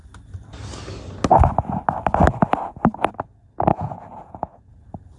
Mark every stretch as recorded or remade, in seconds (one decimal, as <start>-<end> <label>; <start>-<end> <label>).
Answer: 0.0-3.7 recorded; 3.7-4.7 remade; 4.7-5.2 recorded